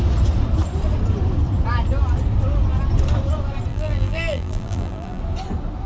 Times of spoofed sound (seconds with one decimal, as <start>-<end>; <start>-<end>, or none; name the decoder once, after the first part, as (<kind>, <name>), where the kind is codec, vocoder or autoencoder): 3.7-5.2 (vocoder, BigVGAN v2)